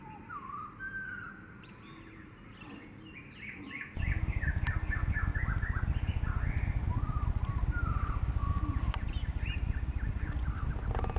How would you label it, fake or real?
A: real